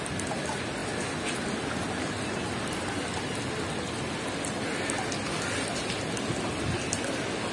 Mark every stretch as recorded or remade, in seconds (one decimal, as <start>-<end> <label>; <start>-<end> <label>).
0.0-7.5 recorded